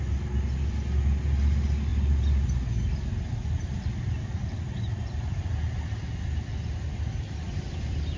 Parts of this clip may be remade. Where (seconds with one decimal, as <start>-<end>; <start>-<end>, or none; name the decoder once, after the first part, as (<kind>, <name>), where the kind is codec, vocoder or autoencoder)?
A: none